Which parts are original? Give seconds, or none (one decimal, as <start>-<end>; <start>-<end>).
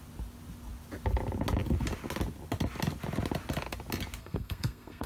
0.0-4.2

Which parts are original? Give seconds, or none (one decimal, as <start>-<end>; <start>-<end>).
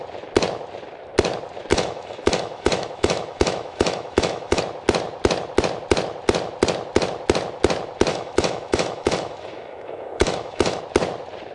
0.0-1.7; 4.6-8.1; 10.8-11.5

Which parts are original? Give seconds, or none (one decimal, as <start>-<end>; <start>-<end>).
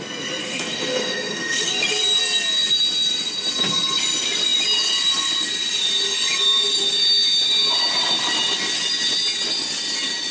0.0-0.4; 1.7-10.3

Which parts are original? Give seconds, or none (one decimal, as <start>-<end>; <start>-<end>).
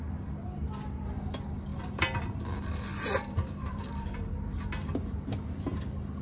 0.0-1.7; 4.3-6.2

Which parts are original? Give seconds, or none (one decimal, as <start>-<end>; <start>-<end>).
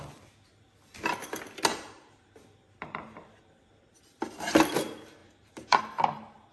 0.0-1.7; 4.7-5.2; 5.8-6.5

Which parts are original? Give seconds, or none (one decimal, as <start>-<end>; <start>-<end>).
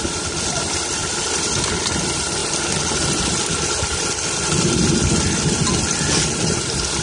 0.0-7.0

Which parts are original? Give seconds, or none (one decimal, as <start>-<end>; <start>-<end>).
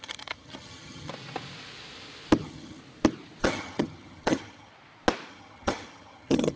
1.1-2.4; 2.8-3.4; 4.7-5.3